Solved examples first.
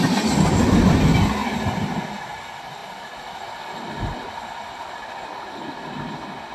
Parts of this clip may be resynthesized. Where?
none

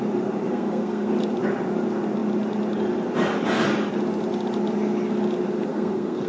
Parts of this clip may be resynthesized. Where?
0.5-1.1 (codec, SNAC); 5.7-6.3

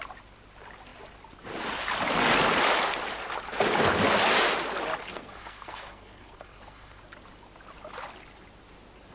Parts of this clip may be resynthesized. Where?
5.1-7.0 (codec, SNAC)

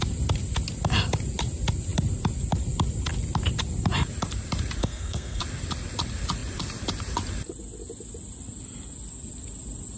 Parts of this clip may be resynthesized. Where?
4.8-5.4 (codec, SNAC)

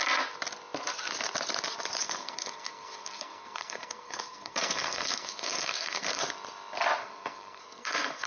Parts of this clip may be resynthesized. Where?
2.0-6.2 (codec, SNAC); 7.0-8.3